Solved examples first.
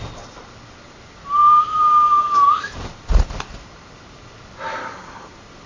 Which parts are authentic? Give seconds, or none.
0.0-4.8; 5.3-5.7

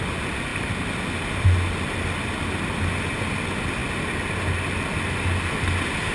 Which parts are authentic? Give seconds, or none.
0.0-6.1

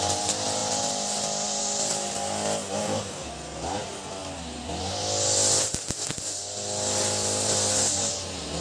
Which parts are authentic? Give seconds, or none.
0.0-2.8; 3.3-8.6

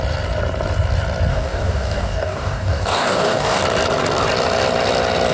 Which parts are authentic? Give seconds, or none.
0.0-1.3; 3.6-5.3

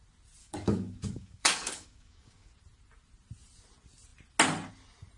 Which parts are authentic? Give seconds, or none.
0.0-0.4; 2.5-5.2

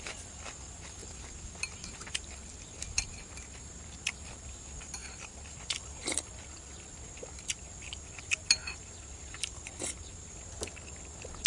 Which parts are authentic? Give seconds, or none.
0.0-11.5

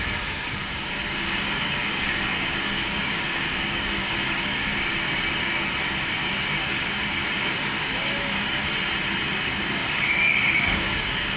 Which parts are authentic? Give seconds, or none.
4.7-7.4; 8.6-9.4